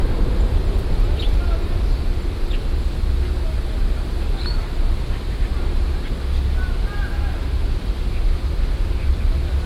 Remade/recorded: recorded